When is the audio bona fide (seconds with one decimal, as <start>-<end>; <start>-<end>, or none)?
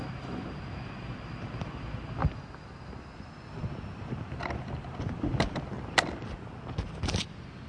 0.0-7.7